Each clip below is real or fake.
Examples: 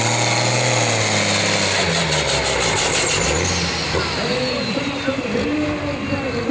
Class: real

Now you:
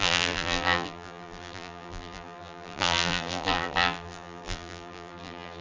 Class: fake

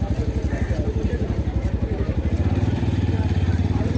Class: fake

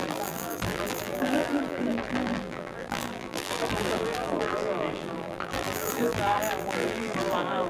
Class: fake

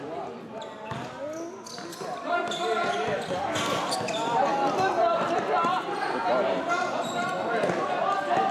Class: real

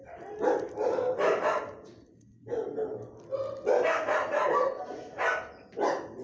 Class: real